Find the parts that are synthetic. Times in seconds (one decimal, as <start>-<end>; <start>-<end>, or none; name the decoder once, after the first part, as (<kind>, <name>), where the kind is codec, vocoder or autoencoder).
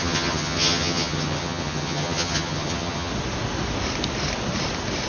0.0-3.1 (vocoder, HiFi-GAN)